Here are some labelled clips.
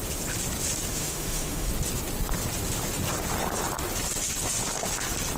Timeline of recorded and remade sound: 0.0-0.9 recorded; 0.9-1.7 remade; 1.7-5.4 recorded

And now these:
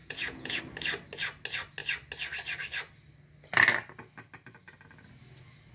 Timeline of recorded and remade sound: 0.0-0.6 remade; 0.6-5.7 recorded